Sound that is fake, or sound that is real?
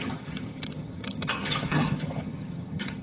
fake